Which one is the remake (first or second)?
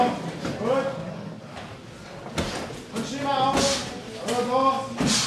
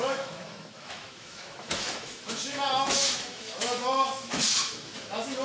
second